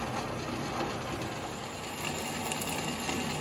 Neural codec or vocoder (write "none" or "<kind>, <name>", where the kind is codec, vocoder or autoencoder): none